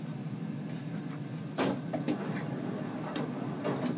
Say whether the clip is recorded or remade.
recorded